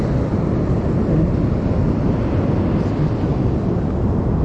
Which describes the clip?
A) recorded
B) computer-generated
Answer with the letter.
A